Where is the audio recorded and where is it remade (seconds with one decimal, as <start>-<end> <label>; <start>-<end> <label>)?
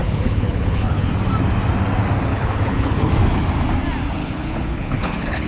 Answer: 0.0-1.1 remade; 1.1-2.3 recorded; 2.3-3.1 remade; 3.1-4.2 recorded; 4.2-5.5 remade